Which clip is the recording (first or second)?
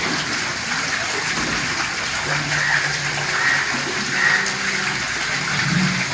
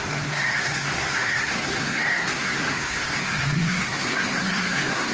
first